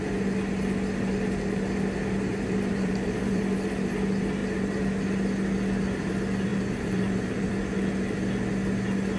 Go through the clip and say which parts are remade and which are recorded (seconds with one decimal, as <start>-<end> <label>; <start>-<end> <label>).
0.0-2.3 recorded; 2.3-3.4 remade; 3.4-6.5 recorded; 6.5-7.5 remade; 7.5-9.2 recorded